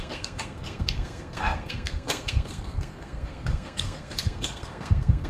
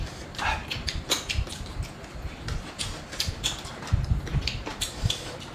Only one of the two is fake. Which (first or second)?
first